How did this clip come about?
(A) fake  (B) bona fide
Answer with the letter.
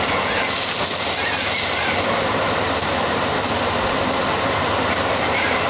A